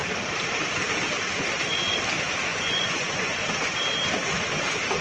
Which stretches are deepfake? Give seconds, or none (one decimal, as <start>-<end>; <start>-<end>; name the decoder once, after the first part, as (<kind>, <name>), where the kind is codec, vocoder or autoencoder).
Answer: 2.5-3.4 (vocoder, Vocos)